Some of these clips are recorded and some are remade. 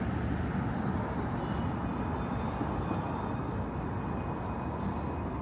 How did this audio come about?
recorded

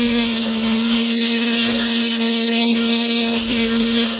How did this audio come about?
remade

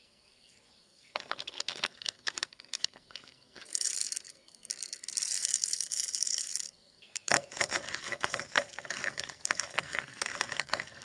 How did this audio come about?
remade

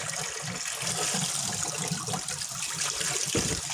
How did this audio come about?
recorded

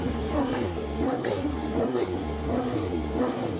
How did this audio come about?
remade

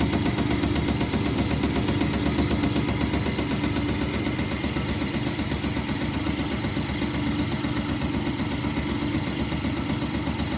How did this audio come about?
recorded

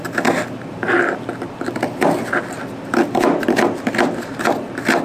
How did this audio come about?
recorded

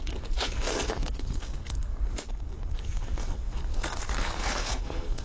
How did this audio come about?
remade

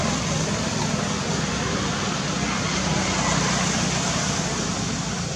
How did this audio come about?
recorded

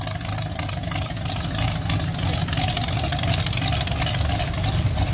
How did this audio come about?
recorded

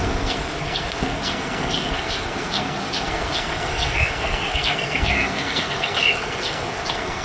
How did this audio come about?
remade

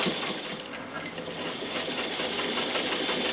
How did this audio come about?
recorded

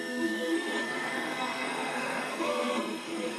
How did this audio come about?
remade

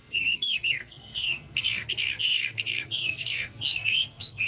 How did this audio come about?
remade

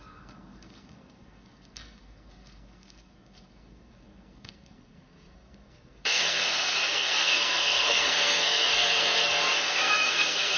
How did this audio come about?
remade